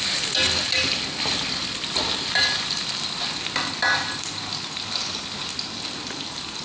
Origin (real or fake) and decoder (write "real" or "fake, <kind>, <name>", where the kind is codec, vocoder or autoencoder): real